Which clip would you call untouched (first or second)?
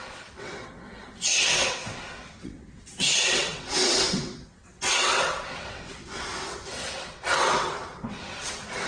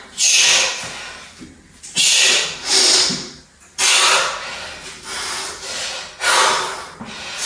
second